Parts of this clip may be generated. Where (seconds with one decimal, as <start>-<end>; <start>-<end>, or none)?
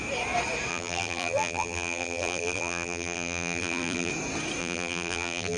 0.7-4.1; 4.6-5.6